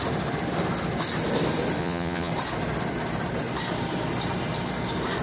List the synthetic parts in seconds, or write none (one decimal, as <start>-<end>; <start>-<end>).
1.8-2.3